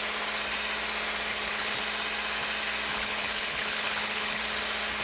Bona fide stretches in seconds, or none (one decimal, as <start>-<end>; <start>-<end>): 0.0-1.3; 1.8-2.9; 4.4-5.0